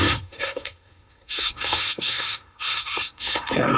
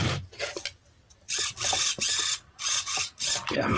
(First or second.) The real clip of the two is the second